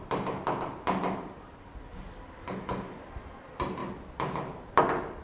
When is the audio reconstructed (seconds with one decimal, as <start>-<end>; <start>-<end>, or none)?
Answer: none